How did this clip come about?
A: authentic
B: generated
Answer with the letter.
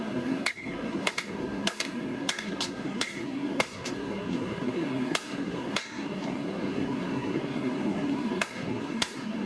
B